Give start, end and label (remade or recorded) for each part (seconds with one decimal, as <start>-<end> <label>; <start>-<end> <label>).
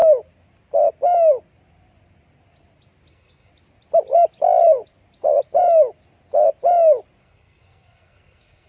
0.0-3.1 recorded; 3.1-3.5 remade; 3.5-7.2 recorded; 7.2-8.7 remade